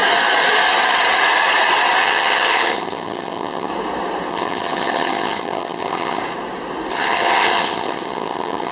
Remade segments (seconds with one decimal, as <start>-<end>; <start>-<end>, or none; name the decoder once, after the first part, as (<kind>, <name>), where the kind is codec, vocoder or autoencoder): 2.0-3.7 (vocoder, HiFi-GAN); 4.3-6.2; 6.9-8.7